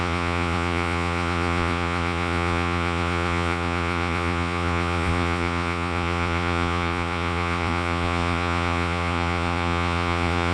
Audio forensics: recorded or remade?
remade